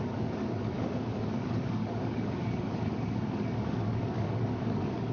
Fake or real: fake